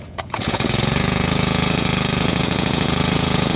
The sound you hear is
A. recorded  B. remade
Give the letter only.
B